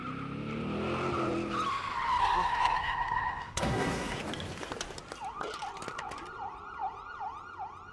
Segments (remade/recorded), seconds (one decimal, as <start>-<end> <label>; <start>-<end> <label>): 0.0-2.2 recorded; 2.2-4.2 remade; 4.2-7.9 recorded